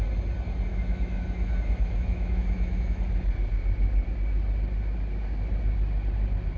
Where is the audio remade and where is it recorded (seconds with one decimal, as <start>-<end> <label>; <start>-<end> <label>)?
0.0-0.7 recorded; 0.7-3.0 remade; 3.0-6.6 recorded